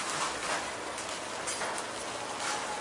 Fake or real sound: real